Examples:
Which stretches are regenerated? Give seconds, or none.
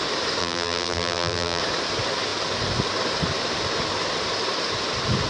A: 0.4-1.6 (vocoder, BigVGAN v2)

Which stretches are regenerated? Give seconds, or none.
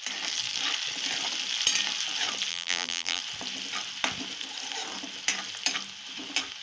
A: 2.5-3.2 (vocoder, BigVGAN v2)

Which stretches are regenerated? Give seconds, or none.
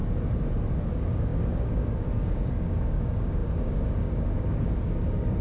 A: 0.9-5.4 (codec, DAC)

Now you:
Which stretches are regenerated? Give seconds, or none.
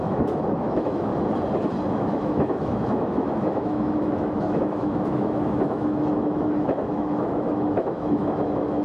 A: 0.0-1.1 (autoencoder, DAC-VAE); 1.9-8.8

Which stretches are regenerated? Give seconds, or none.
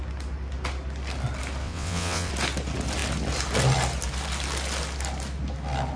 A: 1.6-2.3 (vocoder, WaveNeXt)